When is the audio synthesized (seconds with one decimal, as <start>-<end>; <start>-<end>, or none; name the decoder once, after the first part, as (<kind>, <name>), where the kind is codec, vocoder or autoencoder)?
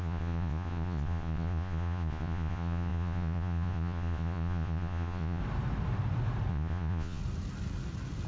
0.0-5.4 (vocoder, Vocos); 6.5-7.2